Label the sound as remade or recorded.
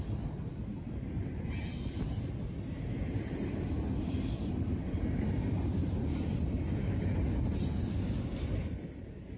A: recorded